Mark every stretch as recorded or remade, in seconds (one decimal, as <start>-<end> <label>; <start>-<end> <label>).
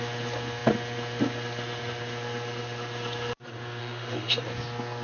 0.0-3.8 recorded; 3.8-4.4 remade; 4.4-5.0 recorded